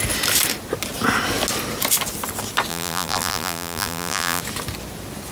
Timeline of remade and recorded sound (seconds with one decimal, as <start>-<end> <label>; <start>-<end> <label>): 0.0-2.7 recorded; 2.7-4.4 remade; 4.4-5.3 recorded